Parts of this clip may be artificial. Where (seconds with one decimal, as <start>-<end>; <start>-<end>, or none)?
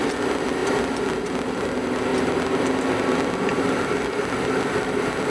none